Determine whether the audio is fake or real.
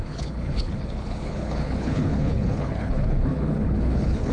fake